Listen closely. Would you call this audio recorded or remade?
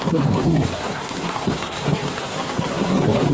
remade